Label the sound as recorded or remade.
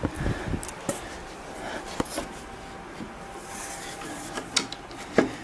recorded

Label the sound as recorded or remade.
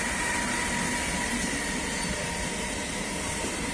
recorded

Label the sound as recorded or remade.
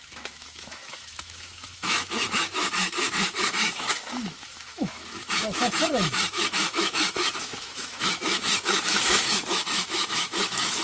remade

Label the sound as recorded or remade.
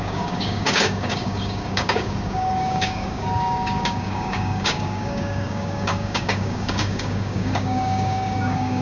remade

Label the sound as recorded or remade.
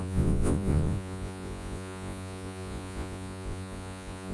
remade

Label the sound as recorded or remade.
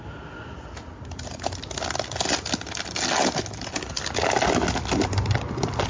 recorded